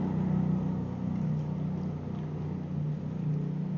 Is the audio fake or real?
real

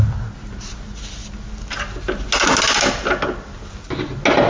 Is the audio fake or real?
real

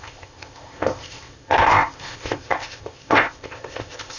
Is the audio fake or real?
fake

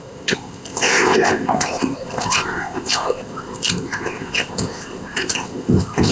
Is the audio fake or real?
fake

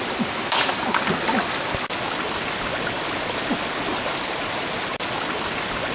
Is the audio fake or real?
real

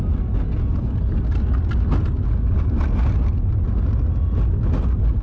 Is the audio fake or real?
real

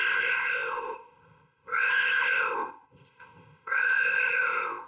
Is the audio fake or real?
fake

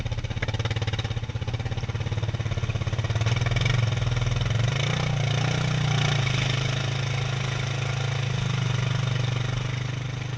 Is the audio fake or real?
real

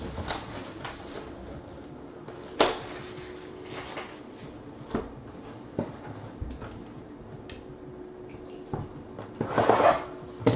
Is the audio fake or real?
real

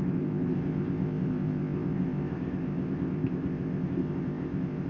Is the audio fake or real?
fake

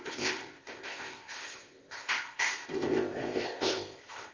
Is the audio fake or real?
fake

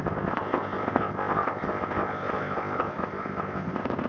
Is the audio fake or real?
fake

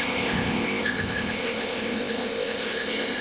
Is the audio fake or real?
fake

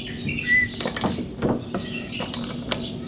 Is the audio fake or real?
real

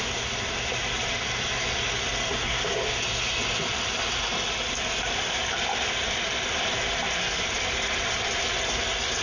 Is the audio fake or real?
real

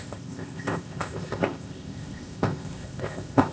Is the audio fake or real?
fake